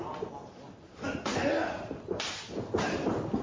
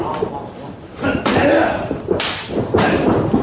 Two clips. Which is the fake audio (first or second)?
second